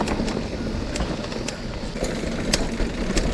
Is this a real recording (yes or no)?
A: yes